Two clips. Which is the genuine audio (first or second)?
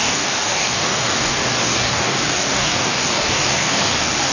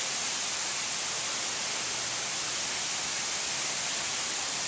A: second